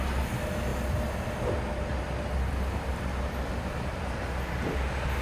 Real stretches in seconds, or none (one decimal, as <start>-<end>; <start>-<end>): 0.0-5.2